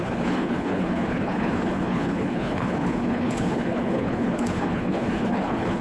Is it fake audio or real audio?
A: fake